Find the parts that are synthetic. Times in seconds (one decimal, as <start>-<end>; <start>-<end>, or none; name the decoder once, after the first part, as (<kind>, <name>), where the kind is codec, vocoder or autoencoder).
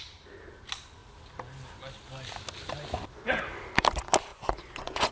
4.3-5.1 (vocoder, Vocos)